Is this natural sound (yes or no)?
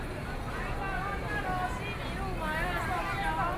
yes